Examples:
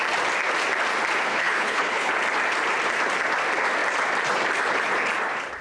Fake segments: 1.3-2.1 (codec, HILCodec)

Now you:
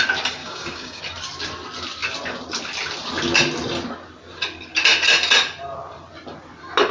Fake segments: 0.4-1.0 (codec, DAC)

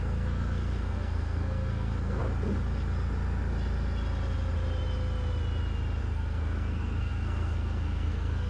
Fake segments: 0.0-2.2 (codec, SNAC); 6.0-8.5